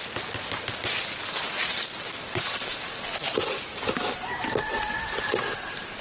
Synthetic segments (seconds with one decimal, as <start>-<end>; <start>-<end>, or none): 1.6-5.2